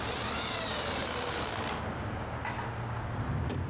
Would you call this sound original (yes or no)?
yes